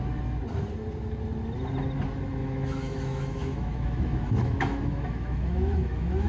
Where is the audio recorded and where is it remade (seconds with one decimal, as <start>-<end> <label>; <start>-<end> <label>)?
0.0-2.4 recorded; 2.4-6.3 remade